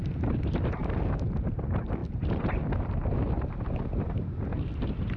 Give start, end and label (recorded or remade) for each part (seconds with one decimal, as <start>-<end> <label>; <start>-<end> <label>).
0.0-5.2 recorded